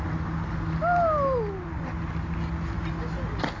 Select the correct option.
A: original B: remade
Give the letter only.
A